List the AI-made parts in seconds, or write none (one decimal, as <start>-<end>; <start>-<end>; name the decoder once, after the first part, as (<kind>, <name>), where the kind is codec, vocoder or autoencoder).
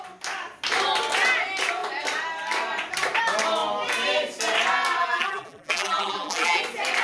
5.0-6.6 (vocoder, BigVGAN v2)